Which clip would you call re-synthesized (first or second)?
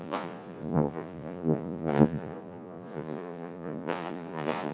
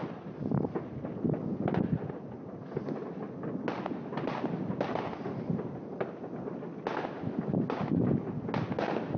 first